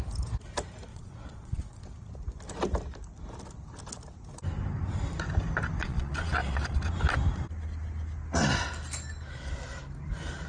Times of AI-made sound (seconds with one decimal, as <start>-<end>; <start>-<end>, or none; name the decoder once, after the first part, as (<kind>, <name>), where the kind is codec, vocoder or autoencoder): 0.9-1.8 (vocoder, Vocos); 5.8-6.8